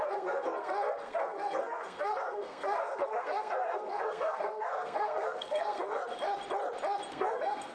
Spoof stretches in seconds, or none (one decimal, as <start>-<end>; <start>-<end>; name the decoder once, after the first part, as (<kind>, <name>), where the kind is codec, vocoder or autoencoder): 0.0-6.0 (codec, SNAC); 7.1-7.7